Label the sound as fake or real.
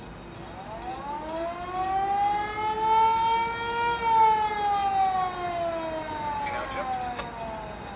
real